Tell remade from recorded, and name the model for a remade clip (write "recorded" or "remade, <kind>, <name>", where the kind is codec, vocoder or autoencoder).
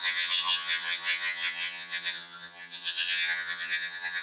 remade, vocoder, HiFi-GAN